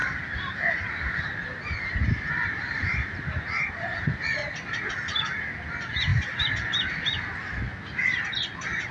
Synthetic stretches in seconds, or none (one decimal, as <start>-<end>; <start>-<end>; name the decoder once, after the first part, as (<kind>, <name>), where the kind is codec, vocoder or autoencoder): 0.0-4.8 (vocoder, BigVGAN v2); 6.1-6.9